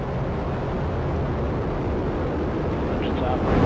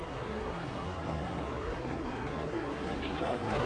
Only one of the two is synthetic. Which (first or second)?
second